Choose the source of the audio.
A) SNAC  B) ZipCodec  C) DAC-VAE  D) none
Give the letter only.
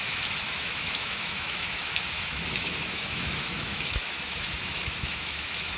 C